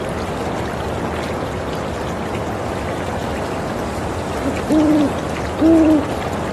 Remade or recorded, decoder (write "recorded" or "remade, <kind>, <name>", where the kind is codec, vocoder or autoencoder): recorded